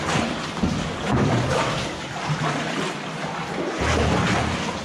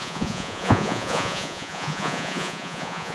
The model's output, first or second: second